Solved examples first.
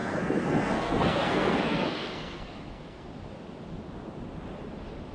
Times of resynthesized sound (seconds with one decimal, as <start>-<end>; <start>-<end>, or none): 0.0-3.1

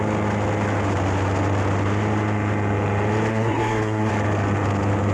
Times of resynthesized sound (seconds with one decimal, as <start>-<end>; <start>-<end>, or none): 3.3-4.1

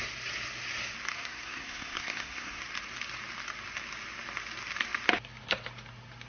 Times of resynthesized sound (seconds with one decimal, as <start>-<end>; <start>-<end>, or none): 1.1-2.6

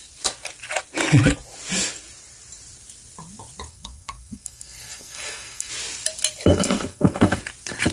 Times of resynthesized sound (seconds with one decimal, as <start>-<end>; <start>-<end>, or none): 3.7-5.7; 6.5-7.4

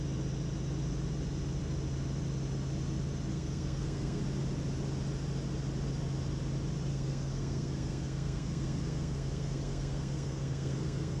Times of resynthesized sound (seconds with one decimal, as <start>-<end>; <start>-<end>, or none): 3.3-4.2; 6.9-11.2

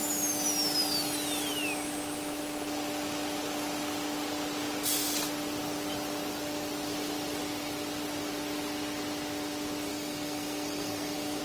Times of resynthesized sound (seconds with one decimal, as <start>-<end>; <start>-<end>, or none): 9.9-11.4

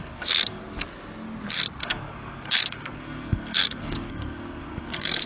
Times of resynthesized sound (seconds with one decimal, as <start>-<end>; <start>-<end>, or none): 0.0-0.6; 1.8-5.3

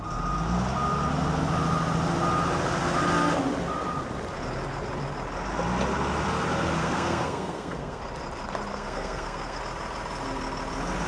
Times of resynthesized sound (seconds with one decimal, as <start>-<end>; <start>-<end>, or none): 6.8-8.0; 8.7-9.6